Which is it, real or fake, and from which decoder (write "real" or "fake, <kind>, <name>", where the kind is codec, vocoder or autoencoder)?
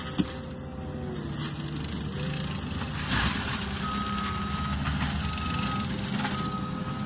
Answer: real